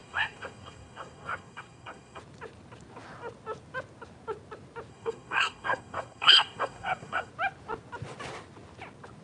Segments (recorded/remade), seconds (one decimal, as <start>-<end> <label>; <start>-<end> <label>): 0.0-2.2 remade; 2.2-4.9 recorded; 4.9-7.3 remade; 7.3-9.2 recorded